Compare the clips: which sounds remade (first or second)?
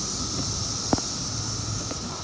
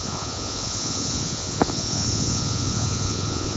second